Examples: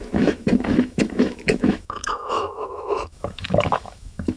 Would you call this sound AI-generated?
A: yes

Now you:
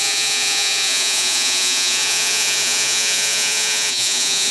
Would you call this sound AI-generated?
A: yes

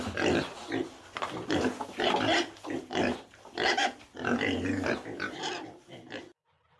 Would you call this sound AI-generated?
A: no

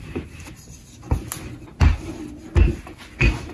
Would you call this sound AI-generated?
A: no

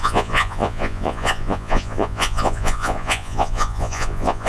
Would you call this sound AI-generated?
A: yes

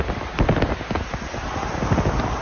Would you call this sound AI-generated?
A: no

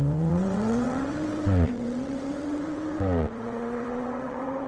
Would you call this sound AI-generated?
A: yes